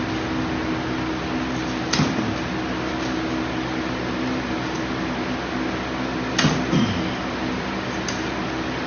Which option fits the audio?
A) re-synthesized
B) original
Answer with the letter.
B